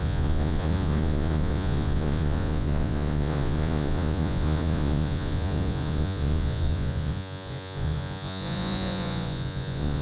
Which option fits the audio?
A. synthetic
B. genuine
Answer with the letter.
A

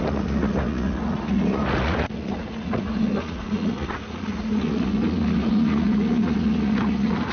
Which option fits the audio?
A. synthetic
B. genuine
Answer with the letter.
A